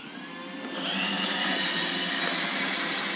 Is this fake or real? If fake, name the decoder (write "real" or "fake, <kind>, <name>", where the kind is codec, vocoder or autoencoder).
real